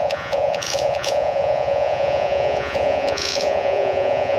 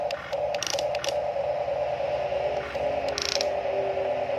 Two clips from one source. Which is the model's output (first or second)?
first